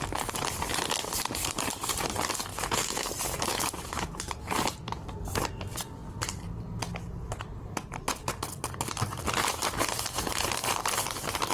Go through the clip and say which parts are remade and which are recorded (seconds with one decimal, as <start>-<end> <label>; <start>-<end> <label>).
0.0-2.5 recorded; 2.5-3.1 remade; 3.1-3.5 recorded; 3.5-4.3 remade; 4.3-11.5 recorded